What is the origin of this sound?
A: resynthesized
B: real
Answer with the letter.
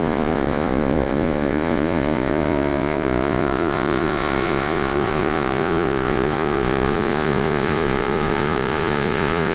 A